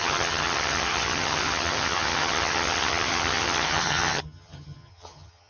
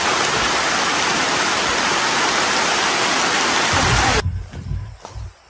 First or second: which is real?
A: second